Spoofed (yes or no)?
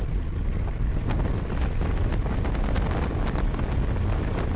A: no